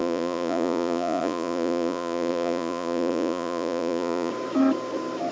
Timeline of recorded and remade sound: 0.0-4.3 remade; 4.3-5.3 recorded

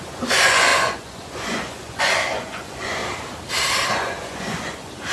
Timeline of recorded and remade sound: 0.0-3.0 remade; 3.0-3.9 recorded; 3.9-5.1 remade